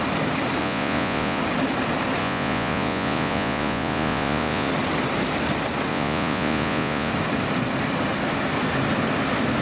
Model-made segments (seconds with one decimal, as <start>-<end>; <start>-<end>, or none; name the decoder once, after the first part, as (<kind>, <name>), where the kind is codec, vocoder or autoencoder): 0.6-1.4 (vocoder, Vocos); 2.2-4.7; 5.9-7.1